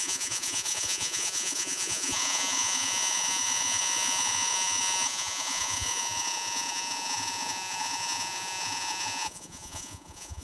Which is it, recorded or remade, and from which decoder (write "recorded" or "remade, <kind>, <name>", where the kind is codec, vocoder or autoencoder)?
remade, vocoder, Vocos